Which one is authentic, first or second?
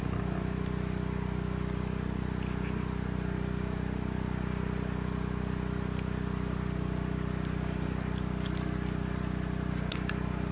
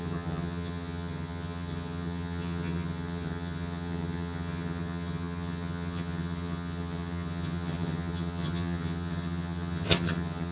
first